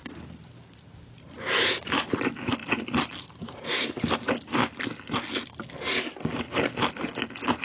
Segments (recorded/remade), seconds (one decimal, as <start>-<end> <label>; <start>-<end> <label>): 0.0-7.6 recorded